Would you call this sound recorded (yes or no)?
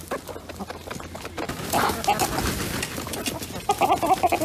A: yes